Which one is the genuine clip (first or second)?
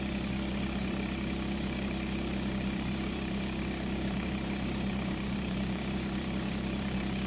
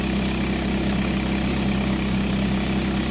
second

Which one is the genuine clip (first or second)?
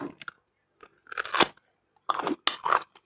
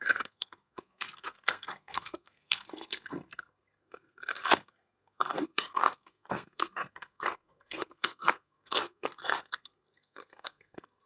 first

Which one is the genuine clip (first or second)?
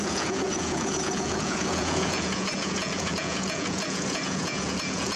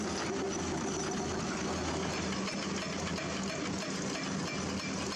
second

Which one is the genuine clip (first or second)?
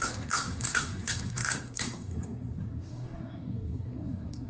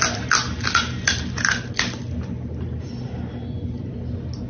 second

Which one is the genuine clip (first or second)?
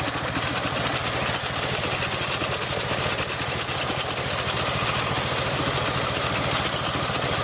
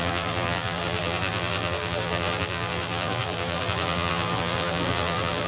first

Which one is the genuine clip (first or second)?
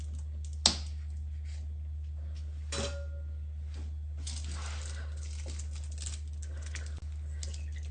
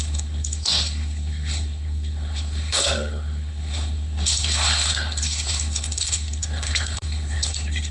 first